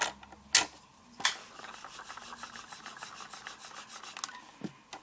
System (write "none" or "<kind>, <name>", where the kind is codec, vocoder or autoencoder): none